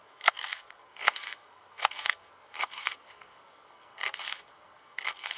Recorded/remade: remade